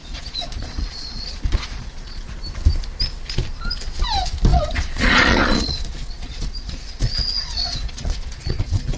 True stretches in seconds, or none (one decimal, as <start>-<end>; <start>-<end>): 2.2-4.5